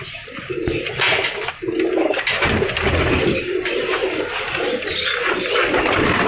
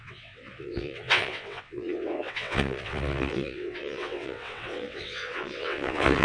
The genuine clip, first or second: first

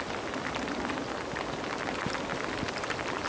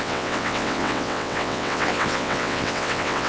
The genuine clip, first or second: first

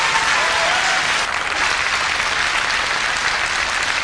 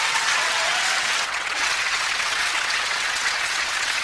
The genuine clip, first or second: first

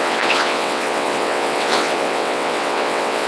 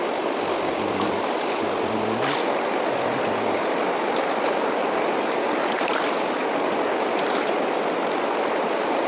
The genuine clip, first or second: second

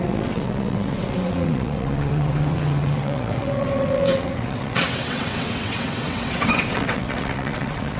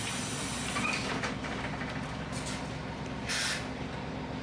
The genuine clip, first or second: second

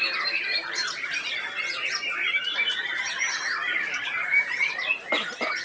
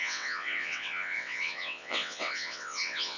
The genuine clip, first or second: first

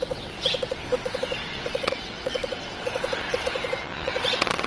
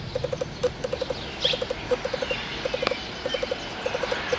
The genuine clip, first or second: second